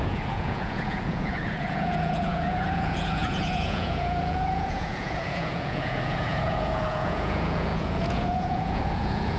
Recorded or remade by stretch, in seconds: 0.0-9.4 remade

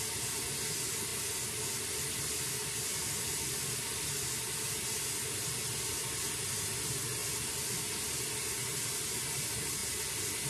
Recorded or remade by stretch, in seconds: 0.0-10.5 recorded

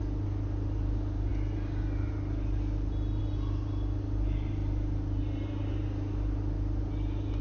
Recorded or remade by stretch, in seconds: 0.0-7.4 recorded

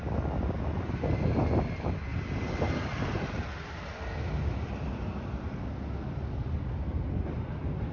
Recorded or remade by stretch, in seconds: 0.0-7.9 recorded

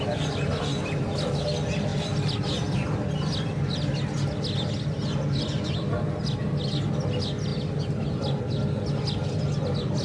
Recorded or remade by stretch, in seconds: 0.0-10.0 recorded